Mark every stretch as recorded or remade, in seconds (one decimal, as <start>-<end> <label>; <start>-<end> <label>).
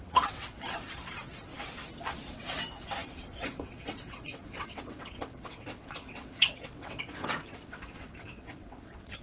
0.0-1.5 remade; 1.5-2.3 recorded; 2.3-9.2 remade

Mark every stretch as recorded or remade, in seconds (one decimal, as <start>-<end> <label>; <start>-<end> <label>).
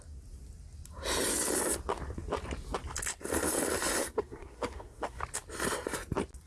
0.0-4.0 recorded; 4.0-5.2 remade; 5.2-6.5 recorded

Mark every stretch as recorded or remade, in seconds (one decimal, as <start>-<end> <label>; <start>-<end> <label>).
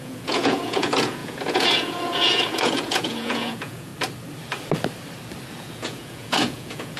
0.0-3.9 remade; 3.9-5.5 recorded; 5.5-7.0 remade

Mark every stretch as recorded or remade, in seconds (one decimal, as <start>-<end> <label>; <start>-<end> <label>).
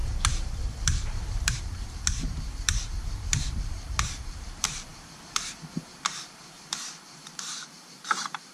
0.0-8.5 remade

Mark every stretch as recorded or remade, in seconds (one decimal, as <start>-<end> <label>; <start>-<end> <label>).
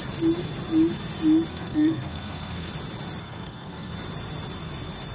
0.0-1.5 recorded; 1.5-2.7 remade; 2.7-3.2 recorded; 3.2-3.9 remade; 3.9-5.1 recorded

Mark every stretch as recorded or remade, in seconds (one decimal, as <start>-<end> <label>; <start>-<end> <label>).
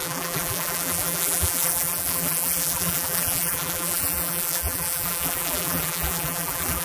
0.0-6.8 remade